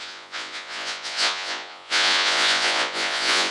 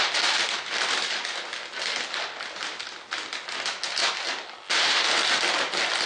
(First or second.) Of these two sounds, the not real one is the first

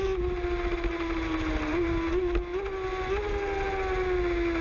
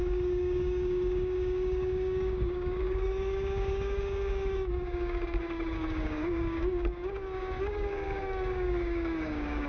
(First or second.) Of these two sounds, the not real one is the second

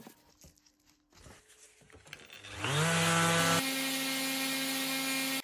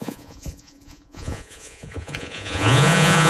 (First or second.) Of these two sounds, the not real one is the second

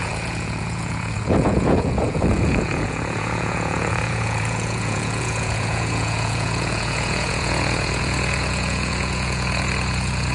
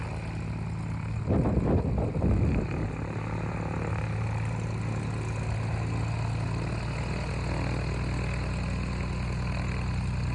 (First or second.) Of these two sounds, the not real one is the first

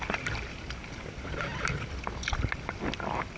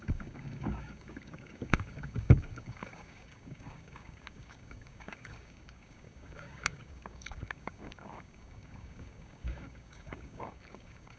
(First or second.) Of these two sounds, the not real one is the second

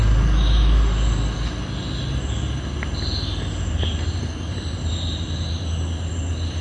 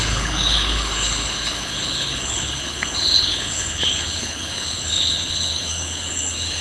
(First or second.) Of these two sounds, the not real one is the second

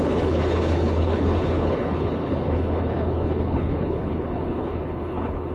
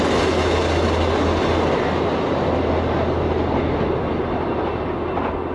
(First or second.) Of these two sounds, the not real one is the first